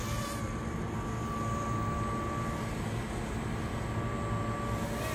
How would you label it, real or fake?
real